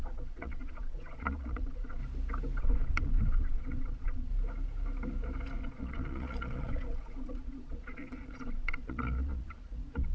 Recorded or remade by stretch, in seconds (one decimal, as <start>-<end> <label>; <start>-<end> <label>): 0.0-2.0 remade; 2.0-2.6 recorded; 2.6-4.3 remade; 4.3-5.6 recorded; 5.6-10.1 remade